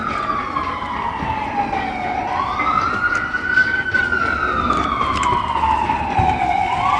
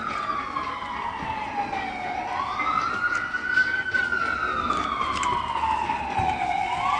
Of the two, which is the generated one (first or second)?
first